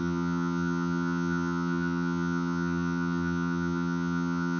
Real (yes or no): no